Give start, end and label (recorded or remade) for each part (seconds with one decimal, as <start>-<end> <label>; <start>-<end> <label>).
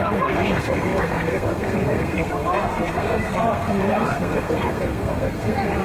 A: 0.0-5.8 remade